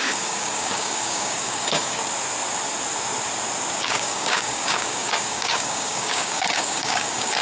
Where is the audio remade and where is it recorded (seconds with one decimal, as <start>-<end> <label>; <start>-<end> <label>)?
0.0-2.0 remade; 2.0-3.8 recorded; 3.8-7.4 remade